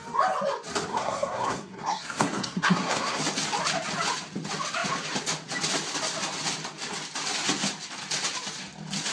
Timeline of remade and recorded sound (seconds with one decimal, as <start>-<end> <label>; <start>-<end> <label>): 0.0-0.9 recorded; 0.9-3.2 remade; 3.2-9.1 recorded